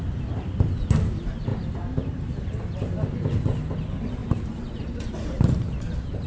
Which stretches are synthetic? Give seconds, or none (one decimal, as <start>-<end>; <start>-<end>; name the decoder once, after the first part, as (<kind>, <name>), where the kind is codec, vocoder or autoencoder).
1.5-2.3 (vocoder, BigVGAN v2); 4.2-5.0

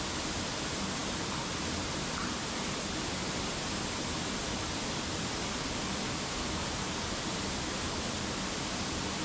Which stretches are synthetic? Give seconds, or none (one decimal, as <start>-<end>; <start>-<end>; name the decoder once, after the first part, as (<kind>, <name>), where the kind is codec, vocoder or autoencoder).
1.0-1.5 (vocoder, BigVGAN v2); 2.4-6.7